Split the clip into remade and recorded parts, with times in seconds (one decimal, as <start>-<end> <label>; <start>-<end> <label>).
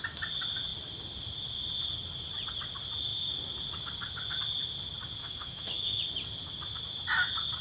0.0-5.2 recorded; 5.2-6.0 remade; 6.0-7.6 recorded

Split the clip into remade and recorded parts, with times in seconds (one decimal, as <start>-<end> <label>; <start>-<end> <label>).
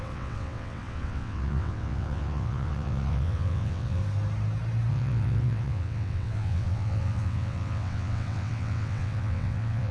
0.0-4.0 remade; 4.0-4.9 recorded; 4.9-9.9 remade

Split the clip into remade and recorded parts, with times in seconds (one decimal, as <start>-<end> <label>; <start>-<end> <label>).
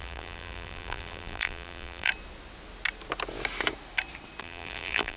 0.0-2.1 remade; 2.1-4.4 recorded; 4.4-5.2 remade